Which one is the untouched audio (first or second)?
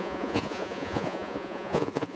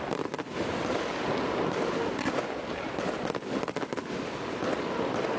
second